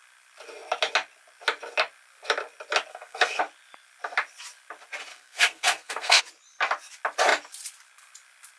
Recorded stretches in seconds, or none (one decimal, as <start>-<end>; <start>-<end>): 0.0-2.9; 3.4-5.1; 6.2-8.6